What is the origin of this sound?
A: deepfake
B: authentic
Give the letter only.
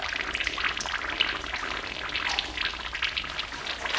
B